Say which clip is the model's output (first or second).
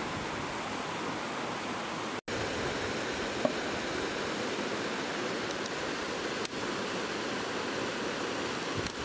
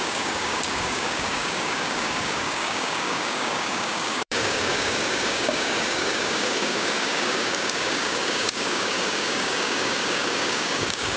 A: second